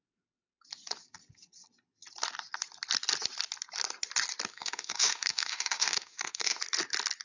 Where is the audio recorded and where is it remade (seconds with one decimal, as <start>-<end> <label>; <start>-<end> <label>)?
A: 0.0-4.5 recorded; 4.5-6.6 remade; 6.6-7.2 recorded